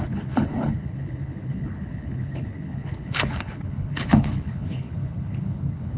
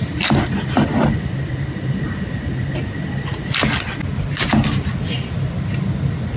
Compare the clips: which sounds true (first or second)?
second